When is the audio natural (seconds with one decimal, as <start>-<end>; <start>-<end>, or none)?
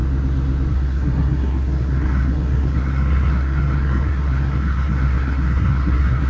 0.0-0.7